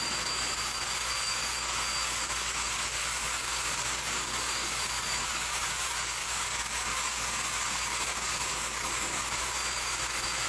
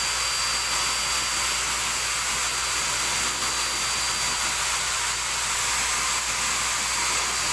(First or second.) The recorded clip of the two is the second